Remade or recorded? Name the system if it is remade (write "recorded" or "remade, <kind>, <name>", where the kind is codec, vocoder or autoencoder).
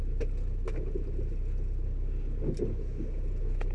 recorded